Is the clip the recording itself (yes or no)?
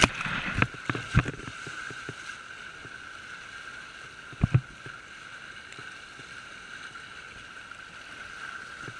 yes